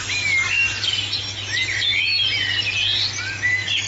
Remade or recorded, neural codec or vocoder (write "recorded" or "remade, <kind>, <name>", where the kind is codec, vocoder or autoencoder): recorded